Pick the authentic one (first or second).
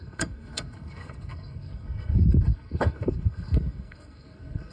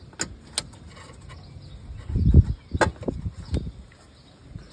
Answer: second